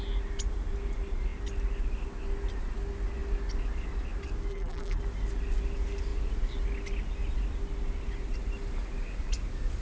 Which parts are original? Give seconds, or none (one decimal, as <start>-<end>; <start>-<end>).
0.0-4.5; 5.0-9.8